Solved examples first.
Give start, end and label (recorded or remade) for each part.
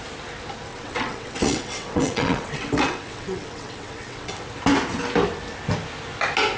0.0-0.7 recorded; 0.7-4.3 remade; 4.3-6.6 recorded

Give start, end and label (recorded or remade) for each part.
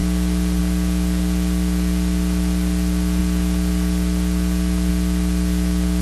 0.0-6.0 recorded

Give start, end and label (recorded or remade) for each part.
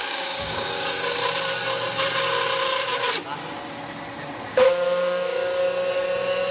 0.0-1.2 remade; 1.2-4.5 recorded; 4.5-5.5 remade; 5.5-6.5 recorded